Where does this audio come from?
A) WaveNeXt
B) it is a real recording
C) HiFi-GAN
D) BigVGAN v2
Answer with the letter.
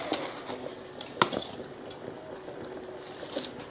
B